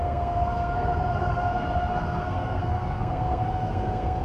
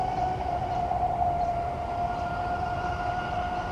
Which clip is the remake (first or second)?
first